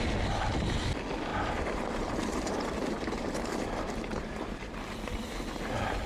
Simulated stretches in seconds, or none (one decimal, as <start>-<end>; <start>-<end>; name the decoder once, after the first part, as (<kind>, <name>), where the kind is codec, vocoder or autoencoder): 1.3-5.0 (vocoder, BigVGAN v2)